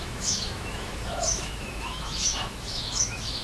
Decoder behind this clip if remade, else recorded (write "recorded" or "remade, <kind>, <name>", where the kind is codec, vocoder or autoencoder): remade, autoencoder, DAC-VAE